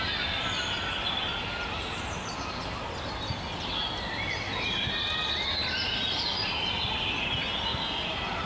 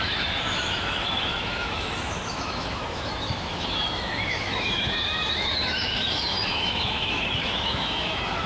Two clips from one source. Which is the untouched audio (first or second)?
first